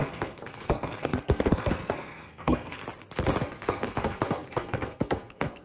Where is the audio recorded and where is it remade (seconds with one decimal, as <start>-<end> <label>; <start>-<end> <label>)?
0.0-2.8 remade; 2.8-3.4 recorded; 3.4-5.6 remade